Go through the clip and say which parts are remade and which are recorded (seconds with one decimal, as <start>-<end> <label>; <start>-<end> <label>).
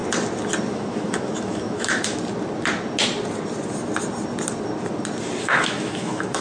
0.0-0.7 recorded; 0.7-2.2 remade; 2.2-5.4 recorded; 5.4-6.4 remade